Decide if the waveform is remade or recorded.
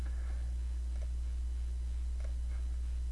recorded